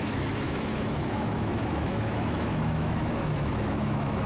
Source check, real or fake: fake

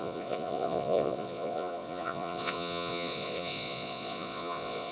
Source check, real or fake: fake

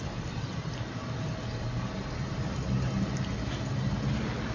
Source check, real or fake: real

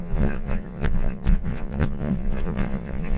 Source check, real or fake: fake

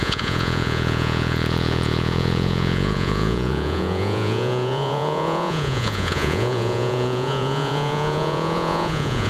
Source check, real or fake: fake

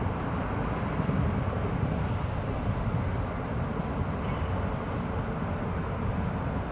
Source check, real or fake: real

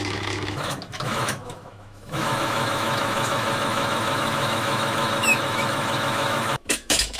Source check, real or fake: fake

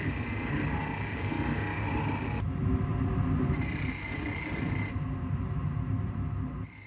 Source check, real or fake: real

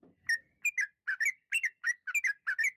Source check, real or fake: real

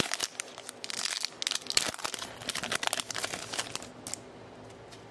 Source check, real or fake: real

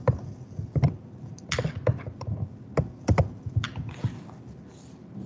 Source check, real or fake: real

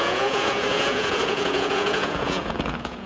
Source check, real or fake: fake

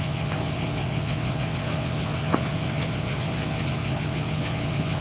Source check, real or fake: fake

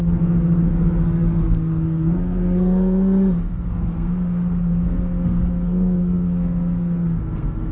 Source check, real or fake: fake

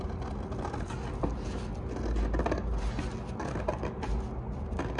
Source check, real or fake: real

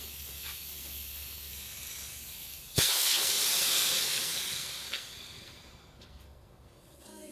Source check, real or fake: fake